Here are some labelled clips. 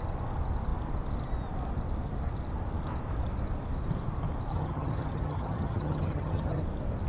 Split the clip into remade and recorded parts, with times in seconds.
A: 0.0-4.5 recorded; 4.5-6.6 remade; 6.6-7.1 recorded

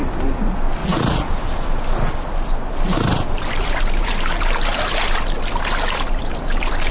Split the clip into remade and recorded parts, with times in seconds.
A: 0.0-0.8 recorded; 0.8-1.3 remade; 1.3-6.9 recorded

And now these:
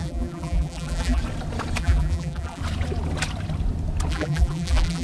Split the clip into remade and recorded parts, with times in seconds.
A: 0.0-1.2 remade; 1.2-1.8 recorded; 1.8-2.6 remade; 2.6-4.1 recorded; 4.1-5.0 remade

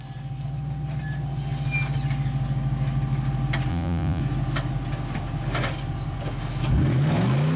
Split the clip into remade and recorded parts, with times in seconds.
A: 0.0-3.7 recorded; 3.7-4.2 remade; 4.2-7.6 recorded

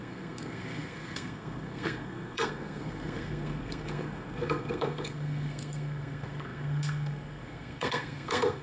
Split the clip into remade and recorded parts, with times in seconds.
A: 0.0-8.6 remade

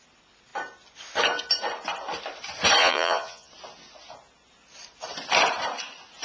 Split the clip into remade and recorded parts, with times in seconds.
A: 0.0-2.8 recorded; 2.8-3.5 remade; 3.5-6.2 recorded

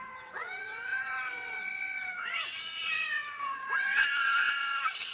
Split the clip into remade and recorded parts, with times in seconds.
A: 0.0-5.1 remade

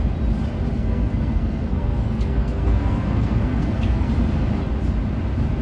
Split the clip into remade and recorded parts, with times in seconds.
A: 0.0-0.7 recorded; 0.7-4.1 remade; 4.1-5.6 recorded